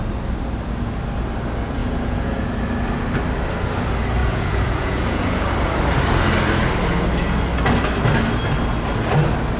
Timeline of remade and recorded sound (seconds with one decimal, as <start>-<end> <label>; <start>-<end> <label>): 0.0-1.8 recorded; 1.8-2.5 remade; 2.5-4.2 recorded; 4.2-5.4 remade; 5.4-9.6 recorded